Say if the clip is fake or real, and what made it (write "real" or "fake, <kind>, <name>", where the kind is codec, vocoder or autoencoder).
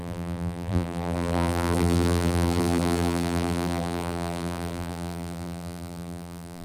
fake, vocoder, BigVGAN v2